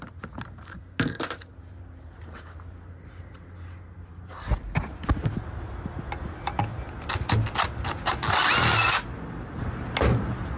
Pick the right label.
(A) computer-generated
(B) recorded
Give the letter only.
B